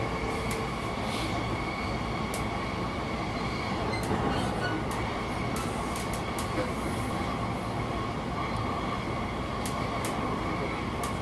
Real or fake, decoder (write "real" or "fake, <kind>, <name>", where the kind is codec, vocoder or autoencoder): real